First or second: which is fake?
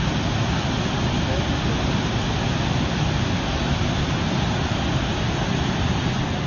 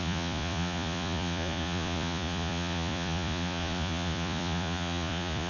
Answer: second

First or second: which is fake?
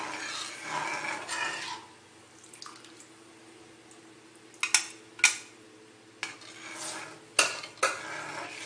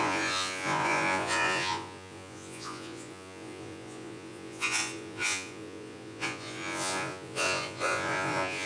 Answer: second